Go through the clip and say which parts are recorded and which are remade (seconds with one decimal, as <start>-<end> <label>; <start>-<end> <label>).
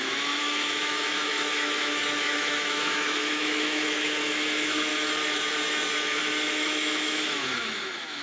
0.0-4.9 remade; 4.9-6.5 recorded; 6.5-8.2 remade